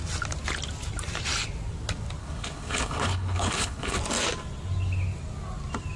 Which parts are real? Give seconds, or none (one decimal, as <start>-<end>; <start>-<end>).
0.0-2.2; 4.0-6.0